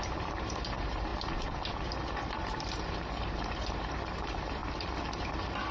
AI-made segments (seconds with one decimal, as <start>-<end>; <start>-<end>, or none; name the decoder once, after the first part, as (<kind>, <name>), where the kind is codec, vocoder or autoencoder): 0.0-1.1 (vocoder, BigVGAN v2); 2.4-4.6